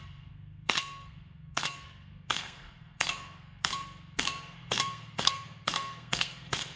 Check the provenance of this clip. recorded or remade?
remade